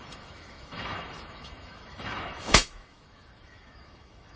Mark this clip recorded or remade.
remade